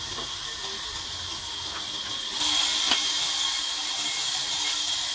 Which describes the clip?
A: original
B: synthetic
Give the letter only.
A